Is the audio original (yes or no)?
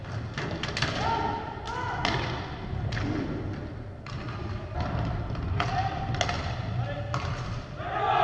yes